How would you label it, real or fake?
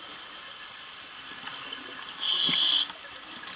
real